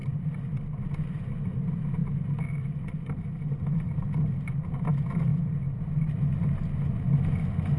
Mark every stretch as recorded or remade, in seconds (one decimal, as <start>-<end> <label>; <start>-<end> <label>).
0.0-7.8 recorded